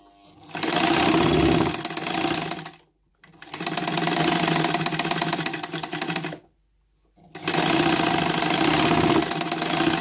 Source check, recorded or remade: recorded